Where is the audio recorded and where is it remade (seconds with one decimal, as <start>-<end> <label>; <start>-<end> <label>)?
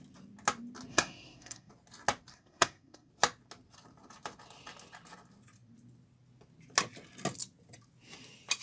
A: 0.0-0.9 recorded; 0.9-1.7 remade; 1.7-2.3 recorded; 2.3-3.1 remade; 3.1-8.6 recorded